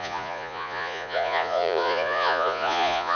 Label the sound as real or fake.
fake